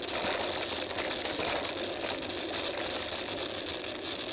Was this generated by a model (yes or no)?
no